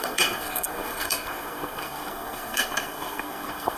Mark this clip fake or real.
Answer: fake